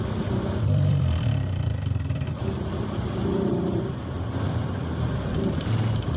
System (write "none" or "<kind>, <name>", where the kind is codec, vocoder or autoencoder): vocoder, BigVGAN v2